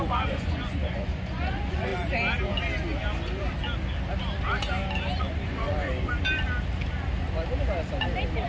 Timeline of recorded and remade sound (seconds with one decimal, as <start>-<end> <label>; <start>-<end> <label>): 0.0-1.9 remade; 1.9-5.2 recorded; 5.2-5.9 remade; 5.9-8.5 recorded